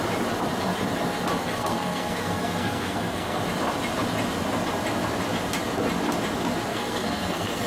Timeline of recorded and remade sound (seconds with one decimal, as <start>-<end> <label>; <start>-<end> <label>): 0.0-1.4 recorded; 1.4-3.4 remade; 3.4-6.7 recorded; 6.7-7.7 remade